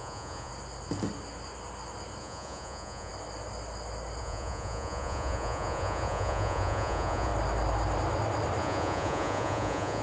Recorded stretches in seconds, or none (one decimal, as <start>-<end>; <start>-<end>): 0.5-2.2; 3.1-4.2; 7.3-8.6